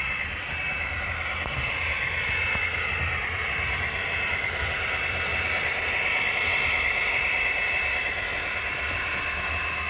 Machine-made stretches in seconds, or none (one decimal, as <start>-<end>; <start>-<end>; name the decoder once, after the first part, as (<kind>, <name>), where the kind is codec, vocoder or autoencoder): 0.0-9.9 (vocoder, BigVGAN v2)